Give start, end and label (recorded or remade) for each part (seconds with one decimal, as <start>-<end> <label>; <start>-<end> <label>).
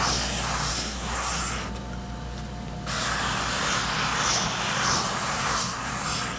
0.0-0.7 recorded; 0.7-1.4 remade; 1.4-5.3 recorded; 5.3-5.9 remade; 5.9-6.4 recorded